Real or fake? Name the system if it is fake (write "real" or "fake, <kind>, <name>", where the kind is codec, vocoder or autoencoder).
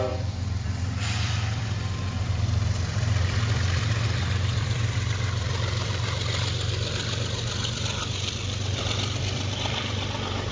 fake, vocoder, BigVGAN v2